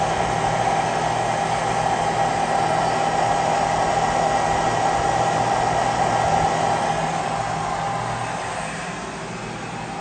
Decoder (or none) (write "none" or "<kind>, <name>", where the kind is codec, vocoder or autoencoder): none